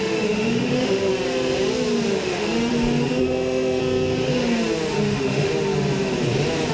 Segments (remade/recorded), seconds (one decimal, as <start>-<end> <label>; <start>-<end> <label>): 0.0-1.1 remade; 1.1-2.1 recorded; 2.1-2.7 remade; 2.7-3.2 recorded; 3.2-3.8 remade; 3.8-5.0 recorded; 5.0-5.5 remade; 5.5-6.7 recorded